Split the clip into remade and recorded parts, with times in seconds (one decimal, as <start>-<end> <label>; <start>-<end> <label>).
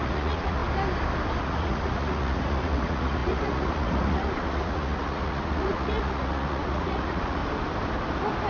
0.0-0.6 remade; 0.6-1.4 recorded; 1.4-7.4 remade; 7.4-8.5 recorded